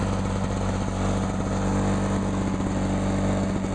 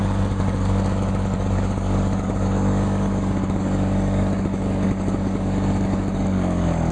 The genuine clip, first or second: first